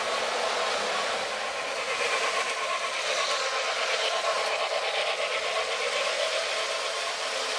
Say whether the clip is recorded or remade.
recorded